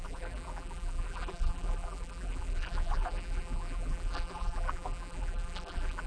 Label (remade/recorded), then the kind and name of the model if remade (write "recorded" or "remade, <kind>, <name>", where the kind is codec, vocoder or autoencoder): remade, vocoder, BigVGAN v2